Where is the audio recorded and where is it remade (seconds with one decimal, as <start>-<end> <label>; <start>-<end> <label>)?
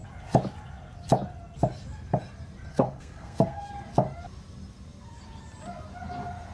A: 0.0-2.7 recorded; 2.7-3.7 remade; 3.7-6.5 recorded